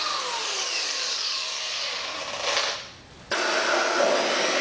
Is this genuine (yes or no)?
yes